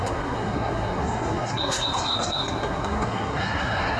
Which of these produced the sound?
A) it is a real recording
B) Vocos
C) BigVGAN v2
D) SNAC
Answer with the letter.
D